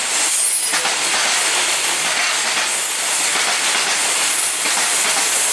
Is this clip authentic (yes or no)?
yes